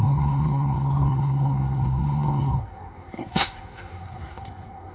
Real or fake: fake